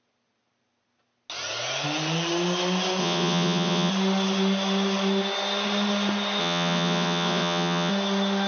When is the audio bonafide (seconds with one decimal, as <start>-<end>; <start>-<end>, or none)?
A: 0.0-3.0; 3.9-6.4; 7.9-8.5